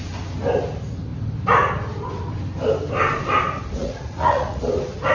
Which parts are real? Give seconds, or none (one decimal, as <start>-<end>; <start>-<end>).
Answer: 0.0-3.8; 4.6-5.1